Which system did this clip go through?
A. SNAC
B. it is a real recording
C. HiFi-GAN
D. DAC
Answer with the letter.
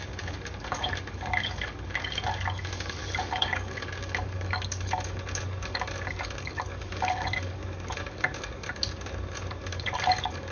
D